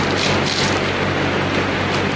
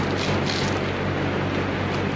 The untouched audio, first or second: second